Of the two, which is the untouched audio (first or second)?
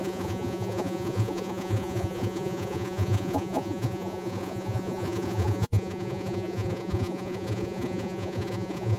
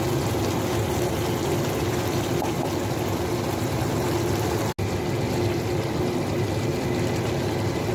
second